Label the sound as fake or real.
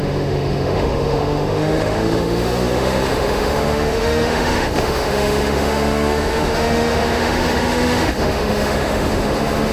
fake